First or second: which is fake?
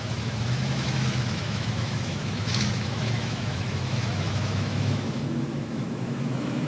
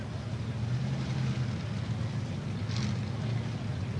first